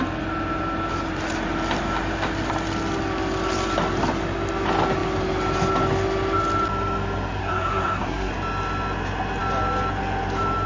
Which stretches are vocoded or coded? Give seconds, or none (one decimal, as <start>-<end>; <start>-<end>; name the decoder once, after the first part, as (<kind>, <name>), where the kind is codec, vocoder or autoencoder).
7.4-8.3 (codec, SNAC)